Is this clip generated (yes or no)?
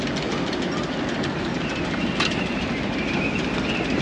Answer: no